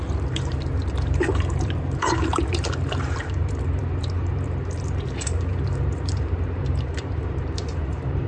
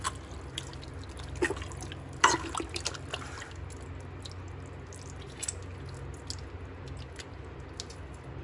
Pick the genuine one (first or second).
second